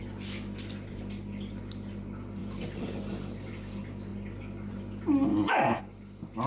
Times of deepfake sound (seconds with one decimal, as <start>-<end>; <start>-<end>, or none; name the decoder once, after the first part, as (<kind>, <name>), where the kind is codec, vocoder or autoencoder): 5.3-5.8 (autoencoder, DAC-VAE)